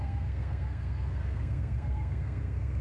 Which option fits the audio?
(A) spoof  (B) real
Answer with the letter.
A